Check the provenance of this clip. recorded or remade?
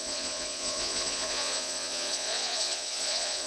remade